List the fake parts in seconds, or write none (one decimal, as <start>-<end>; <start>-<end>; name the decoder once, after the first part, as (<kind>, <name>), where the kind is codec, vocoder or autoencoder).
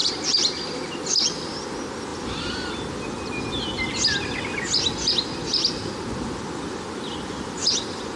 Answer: 0.0-0.9 (vocoder, BigVGAN v2); 2.1-2.7